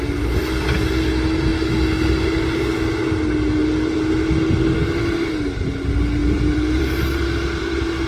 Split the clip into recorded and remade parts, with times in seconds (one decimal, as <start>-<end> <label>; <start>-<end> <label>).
0.0-3.6 recorded; 3.6-4.1 remade; 4.1-6.2 recorded; 6.2-8.1 remade